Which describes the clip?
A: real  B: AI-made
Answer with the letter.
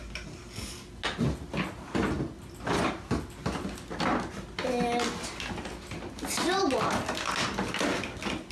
A